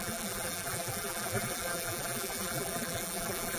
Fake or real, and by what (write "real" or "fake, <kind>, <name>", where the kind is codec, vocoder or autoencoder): fake, vocoder, BigVGAN v2